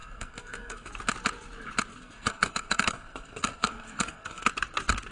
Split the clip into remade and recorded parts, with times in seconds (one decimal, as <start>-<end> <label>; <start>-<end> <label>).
0.0-0.9 remade; 0.9-1.9 recorded; 1.9-4.5 remade; 4.5-5.1 recorded